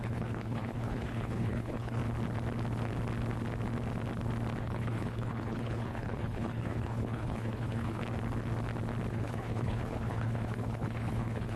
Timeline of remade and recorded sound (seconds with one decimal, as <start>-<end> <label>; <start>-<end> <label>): 0.0-2.0 remade; 2.0-4.6 recorded; 4.6-8.0 remade; 8.0-9.1 recorded; 9.1-11.6 remade